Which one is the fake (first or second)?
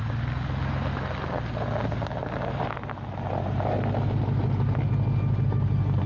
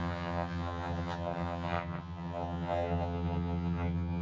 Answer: second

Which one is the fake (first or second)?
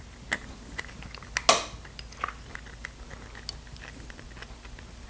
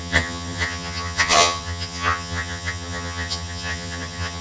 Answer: second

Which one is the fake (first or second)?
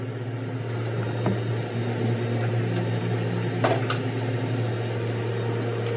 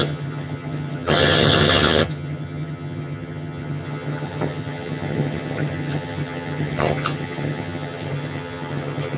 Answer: second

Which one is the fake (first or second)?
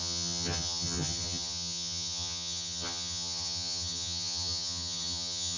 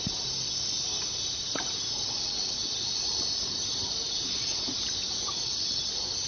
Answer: first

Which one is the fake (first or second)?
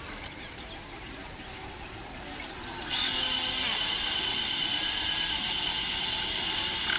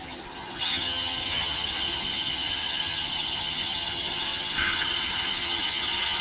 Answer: second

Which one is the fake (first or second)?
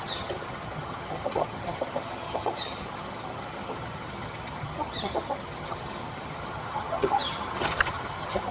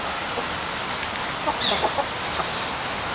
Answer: first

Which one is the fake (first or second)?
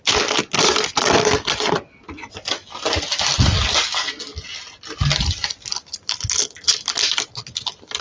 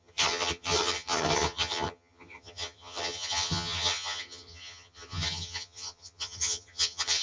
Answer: second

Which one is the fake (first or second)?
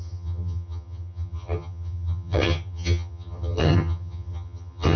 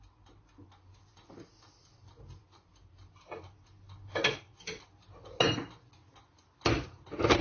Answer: first